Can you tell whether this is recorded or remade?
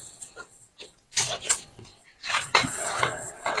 remade